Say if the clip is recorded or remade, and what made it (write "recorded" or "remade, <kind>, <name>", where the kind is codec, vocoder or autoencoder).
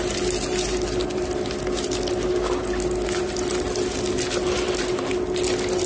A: recorded